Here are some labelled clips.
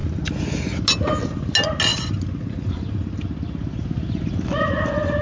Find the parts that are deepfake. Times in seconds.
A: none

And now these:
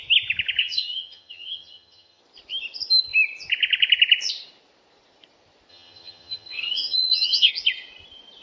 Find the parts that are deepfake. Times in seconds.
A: 0.6-2.2 (vocoder, HiFi-GAN); 5.7-7.5